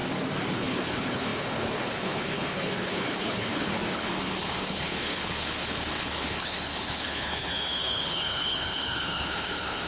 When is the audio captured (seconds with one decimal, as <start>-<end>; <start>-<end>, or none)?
0.0-0.5